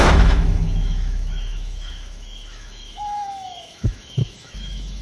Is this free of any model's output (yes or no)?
no